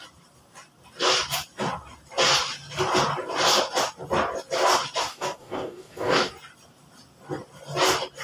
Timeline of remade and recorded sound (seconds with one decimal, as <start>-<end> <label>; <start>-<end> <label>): 0.0-5.1 recorded; 5.1-6.3 remade; 6.3-8.2 recorded